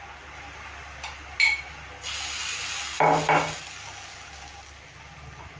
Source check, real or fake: real